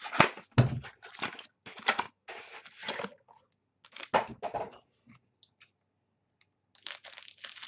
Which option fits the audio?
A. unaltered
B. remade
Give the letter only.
A